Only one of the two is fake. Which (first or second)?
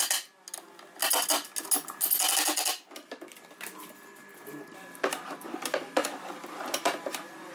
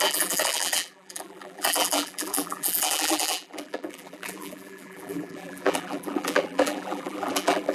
second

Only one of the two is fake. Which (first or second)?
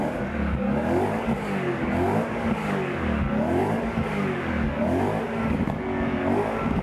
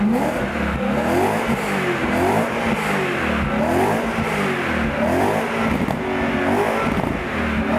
first